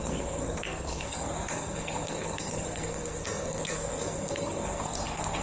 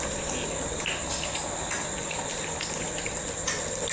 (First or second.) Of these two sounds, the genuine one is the second